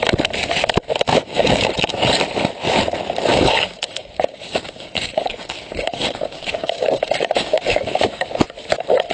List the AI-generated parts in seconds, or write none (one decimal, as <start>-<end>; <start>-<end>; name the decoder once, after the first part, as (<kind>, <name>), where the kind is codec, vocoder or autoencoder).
1.1-1.7 (codec, DAC); 3.3-8.4